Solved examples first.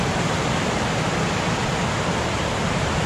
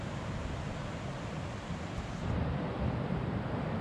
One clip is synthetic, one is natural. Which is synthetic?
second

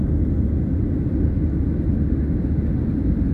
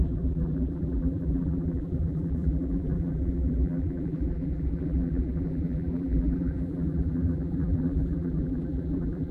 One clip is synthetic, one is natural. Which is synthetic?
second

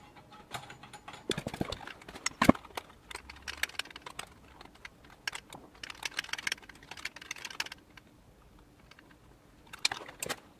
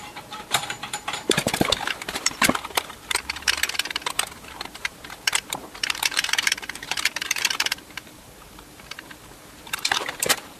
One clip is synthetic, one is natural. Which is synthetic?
second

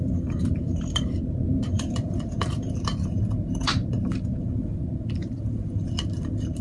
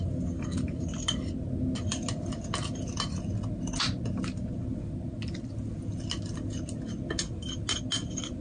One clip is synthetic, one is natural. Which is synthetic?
first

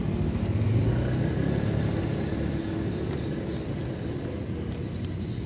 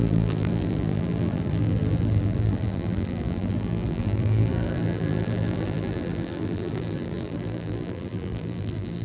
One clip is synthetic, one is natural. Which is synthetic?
second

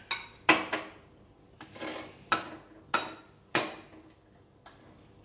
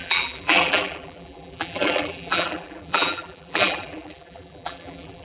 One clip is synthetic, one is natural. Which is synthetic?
second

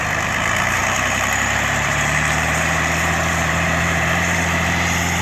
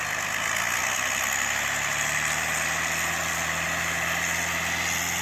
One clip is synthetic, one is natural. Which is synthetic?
first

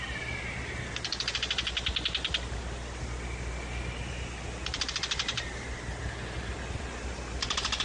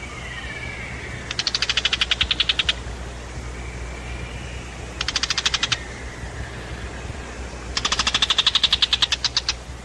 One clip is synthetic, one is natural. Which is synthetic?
first